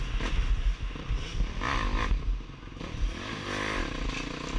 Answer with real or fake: real